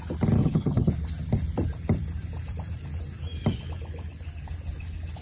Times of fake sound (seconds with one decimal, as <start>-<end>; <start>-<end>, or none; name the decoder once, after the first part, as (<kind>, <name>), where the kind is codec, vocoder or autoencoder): 0.4-0.9 (vocoder, HiFi-GAN)